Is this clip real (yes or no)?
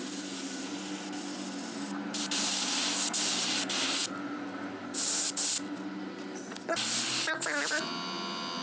yes